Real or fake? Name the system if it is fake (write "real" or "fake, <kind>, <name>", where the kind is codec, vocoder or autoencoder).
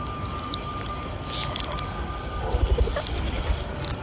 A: real